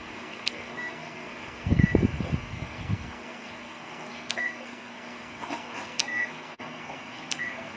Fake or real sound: fake